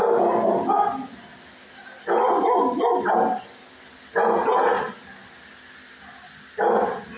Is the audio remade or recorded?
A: recorded